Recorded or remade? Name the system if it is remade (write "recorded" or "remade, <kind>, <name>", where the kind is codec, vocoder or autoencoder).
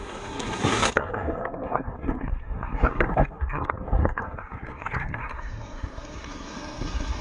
remade, codec, SNAC